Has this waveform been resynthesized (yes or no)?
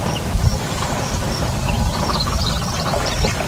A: yes